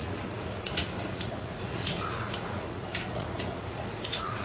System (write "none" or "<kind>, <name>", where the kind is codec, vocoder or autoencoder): vocoder, Vocos